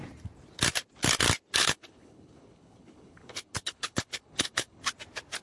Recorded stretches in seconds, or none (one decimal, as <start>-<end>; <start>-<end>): 0.0-1.6; 4.8-5.4